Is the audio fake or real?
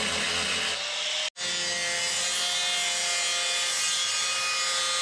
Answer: real